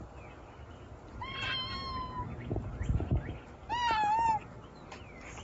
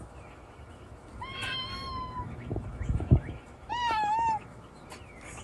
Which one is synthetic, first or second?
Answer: second